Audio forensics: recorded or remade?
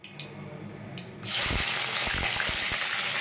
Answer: recorded